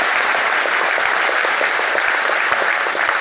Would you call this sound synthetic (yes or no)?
no